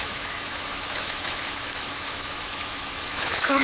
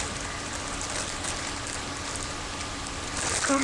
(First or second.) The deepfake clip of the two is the first